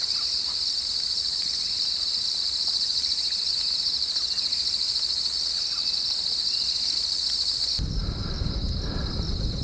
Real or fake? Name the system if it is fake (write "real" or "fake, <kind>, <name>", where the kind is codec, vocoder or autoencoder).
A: real